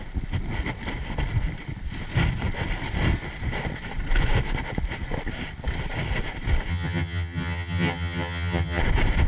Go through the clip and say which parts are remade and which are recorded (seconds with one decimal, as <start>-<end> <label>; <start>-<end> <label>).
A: 0.0-6.7 recorded; 6.7-8.8 remade; 8.8-9.3 recorded